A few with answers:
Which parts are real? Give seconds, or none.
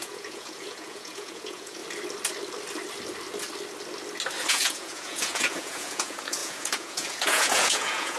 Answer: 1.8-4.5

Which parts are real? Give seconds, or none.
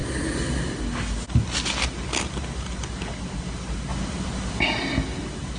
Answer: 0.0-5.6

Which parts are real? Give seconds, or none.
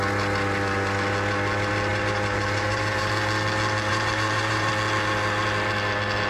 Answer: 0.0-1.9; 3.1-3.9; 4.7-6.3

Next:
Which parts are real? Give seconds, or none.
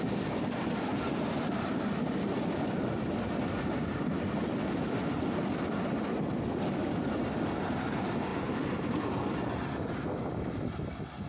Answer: 0.0-11.3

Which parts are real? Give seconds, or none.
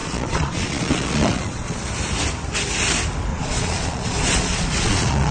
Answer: 1.8-3.3